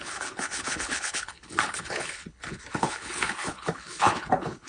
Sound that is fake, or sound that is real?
fake